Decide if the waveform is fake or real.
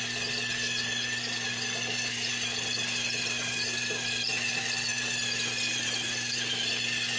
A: fake